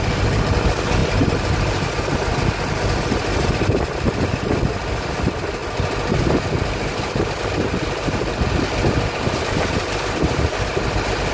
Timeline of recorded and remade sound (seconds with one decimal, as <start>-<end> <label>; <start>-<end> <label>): 0.0-1.0 recorded; 1.0-1.9 remade; 1.9-11.3 recorded